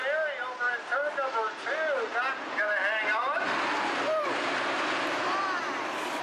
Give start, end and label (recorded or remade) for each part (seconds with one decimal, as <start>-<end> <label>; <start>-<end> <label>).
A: 0.0-3.1 recorded; 3.1-6.2 remade